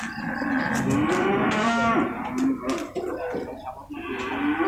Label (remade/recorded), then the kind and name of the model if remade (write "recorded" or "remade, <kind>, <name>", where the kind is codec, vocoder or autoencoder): recorded